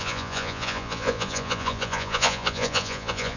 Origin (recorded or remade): remade